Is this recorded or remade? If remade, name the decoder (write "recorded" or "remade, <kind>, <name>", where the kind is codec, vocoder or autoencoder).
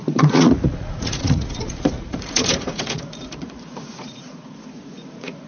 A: remade, vocoder, Vocos